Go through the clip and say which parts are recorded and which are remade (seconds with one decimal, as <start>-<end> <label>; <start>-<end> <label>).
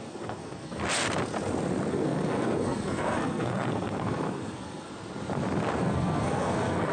0.0-0.8 remade; 0.8-1.9 recorded; 1.9-4.9 remade; 4.9-5.8 recorded; 5.8-6.9 remade